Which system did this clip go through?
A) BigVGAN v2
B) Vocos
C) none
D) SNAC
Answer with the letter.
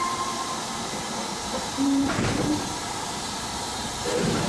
A